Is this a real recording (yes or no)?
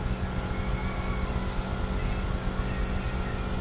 yes